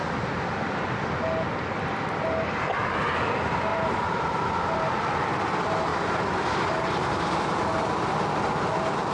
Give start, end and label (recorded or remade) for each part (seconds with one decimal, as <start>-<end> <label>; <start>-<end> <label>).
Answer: 0.0-3.7 recorded; 3.7-5.2 remade; 5.2-5.9 recorded; 5.9-6.9 remade; 6.9-9.1 recorded